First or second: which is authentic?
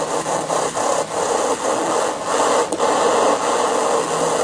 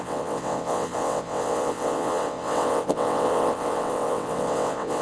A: first